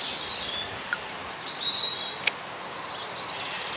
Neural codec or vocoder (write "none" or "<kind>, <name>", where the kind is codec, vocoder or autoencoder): none